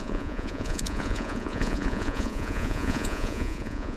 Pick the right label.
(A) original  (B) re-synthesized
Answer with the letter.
B